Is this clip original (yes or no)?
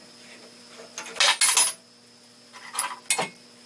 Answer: yes